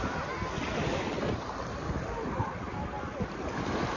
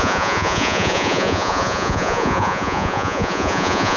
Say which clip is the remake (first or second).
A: second